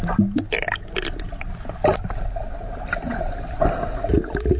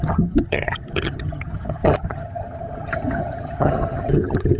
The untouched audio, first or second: first